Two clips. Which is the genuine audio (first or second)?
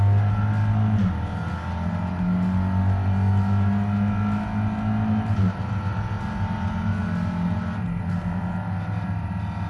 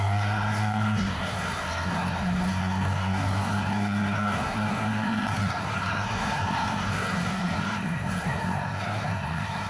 first